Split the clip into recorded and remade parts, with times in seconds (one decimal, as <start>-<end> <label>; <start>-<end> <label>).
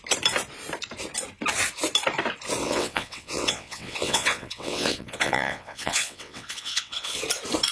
0.0-2.6 recorded; 2.6-7.2 remade; 7.2-7.7 recorded